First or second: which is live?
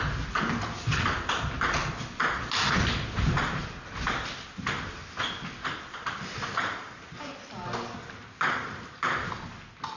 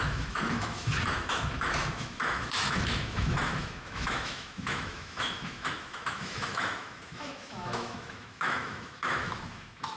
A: first